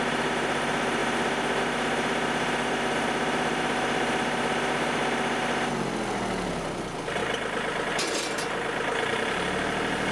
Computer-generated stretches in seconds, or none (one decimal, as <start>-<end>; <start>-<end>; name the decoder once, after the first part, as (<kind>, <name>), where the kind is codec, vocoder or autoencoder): none